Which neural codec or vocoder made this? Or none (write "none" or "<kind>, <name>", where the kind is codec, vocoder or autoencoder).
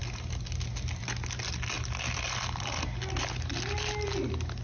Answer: none